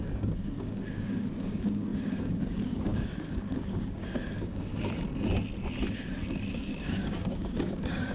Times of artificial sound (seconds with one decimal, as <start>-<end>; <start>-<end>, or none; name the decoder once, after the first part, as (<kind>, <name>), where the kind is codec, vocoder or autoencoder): 0.0-4.7 (codec, DAC); 6.5-8.1